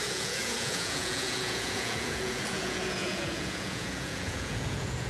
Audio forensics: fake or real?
fake